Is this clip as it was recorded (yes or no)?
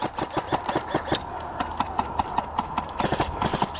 yes